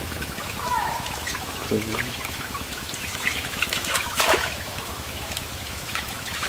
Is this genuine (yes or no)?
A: no